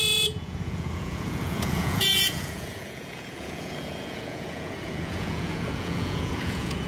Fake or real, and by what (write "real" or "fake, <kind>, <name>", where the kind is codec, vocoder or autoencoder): fake, vocoder, Vocos